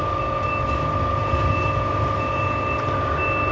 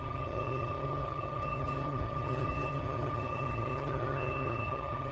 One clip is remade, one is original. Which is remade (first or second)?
second